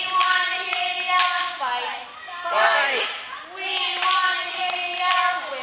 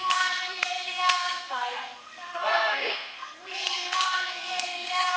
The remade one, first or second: second